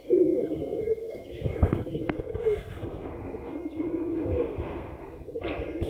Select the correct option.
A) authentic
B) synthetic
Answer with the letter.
B